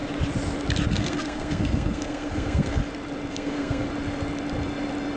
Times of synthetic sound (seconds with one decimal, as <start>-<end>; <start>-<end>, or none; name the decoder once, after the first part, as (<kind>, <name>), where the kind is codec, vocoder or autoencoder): 0.9-2.8 (codec, SNAC); 3.3-3.9